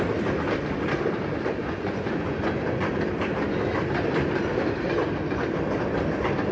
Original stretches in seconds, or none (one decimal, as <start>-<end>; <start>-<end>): 0.0-1.6; 2.9-6.5